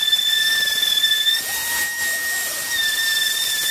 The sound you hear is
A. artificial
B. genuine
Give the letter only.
B